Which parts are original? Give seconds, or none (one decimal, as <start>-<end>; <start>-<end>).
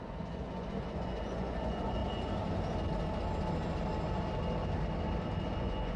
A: 2.0-5.6